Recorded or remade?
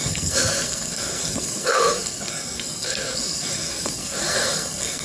remade